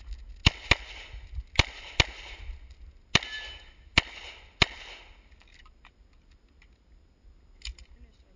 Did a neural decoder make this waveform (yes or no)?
no